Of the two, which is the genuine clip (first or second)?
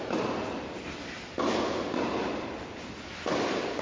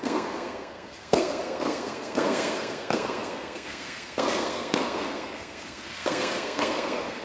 first